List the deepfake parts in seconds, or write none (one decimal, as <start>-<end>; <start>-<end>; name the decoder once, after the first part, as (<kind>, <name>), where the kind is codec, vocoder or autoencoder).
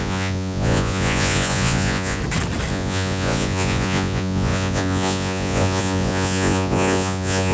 0.0-2.2 (vocoder, Vocos); 2.7-7.5